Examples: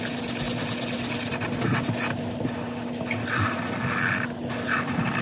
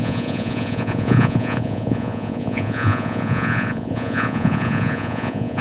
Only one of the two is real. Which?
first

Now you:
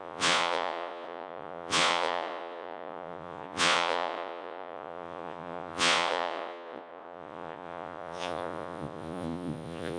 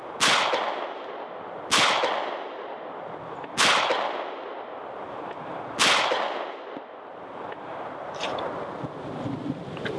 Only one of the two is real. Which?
second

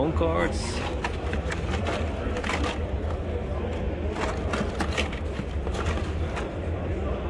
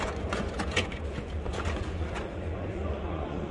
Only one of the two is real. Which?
first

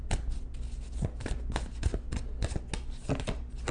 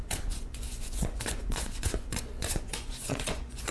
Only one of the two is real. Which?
first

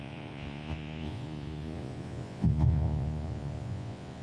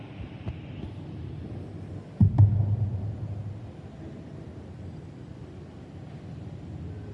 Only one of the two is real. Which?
second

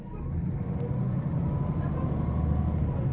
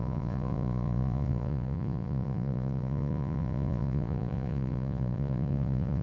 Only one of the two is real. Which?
first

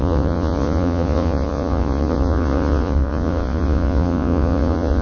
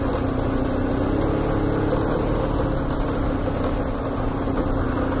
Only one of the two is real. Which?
second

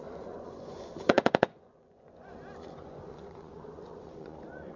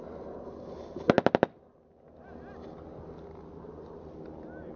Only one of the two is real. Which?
second